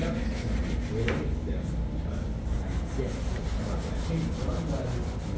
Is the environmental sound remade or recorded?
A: recorded